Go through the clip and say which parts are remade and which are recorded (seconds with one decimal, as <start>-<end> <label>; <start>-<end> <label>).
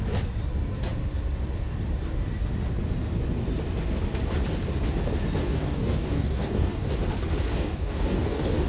0.0-5.4 recorded; 5.4-6.9 remade; 6.9-7.5 recorded; 7.5-8.7 remade